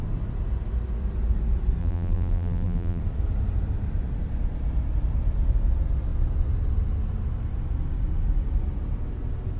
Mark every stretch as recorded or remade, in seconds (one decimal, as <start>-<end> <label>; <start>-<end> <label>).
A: 0.0-1.8 recorded; 1.8-3.0 remade; 3.0-9.6 recorded